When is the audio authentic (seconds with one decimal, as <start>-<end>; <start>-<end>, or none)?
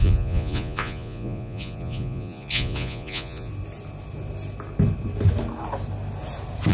3.5-6.7